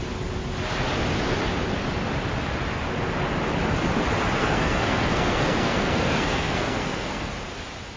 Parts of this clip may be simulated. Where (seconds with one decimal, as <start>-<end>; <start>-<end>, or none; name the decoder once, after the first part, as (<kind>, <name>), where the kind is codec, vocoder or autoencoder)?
4.4-7.3 (codec, SNAC)